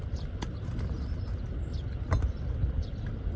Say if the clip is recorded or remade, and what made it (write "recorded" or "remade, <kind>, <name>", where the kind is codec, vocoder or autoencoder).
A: recorded